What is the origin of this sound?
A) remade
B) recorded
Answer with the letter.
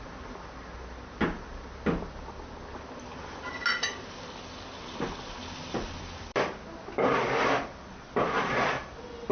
B